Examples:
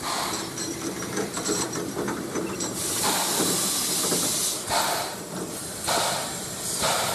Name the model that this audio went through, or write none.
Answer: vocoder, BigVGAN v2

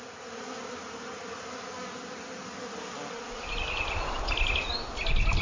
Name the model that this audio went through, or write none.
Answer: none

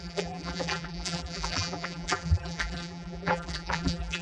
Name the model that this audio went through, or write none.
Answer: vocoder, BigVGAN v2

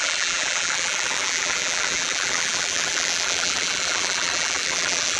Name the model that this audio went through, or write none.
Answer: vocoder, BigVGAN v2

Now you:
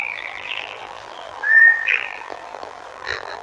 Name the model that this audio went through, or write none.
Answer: vocoder, BigVGAN v2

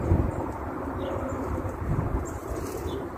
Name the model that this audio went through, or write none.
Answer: vocoder, BigVGAN v2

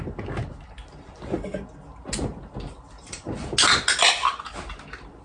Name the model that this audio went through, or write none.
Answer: none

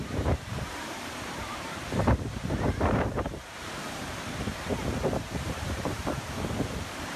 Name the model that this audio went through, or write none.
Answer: vocoder, BigVGAN v2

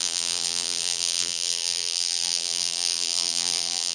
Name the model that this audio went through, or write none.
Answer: vocoder, BigVGAN v2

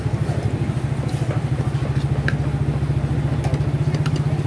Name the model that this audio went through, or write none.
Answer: none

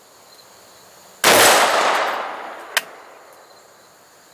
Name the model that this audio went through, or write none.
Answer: none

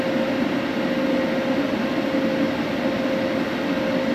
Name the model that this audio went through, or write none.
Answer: none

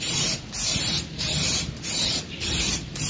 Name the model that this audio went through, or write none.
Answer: vocoder, BigVGAN v2